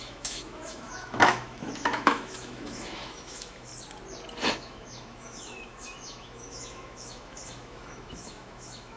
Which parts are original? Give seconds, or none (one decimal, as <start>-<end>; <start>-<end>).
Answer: 3.7-4.5